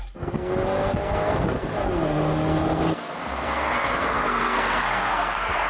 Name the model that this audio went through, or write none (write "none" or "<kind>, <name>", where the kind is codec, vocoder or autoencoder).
codec, SNAC